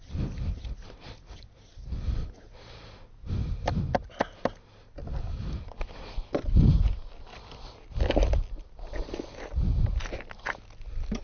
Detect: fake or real real